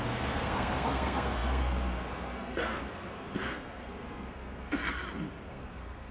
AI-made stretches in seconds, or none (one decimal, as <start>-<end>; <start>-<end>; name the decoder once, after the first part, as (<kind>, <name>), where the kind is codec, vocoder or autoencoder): 0.0-4.8 (codec, SNAC); 5.5-6.1